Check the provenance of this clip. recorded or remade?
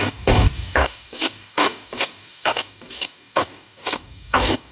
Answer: remade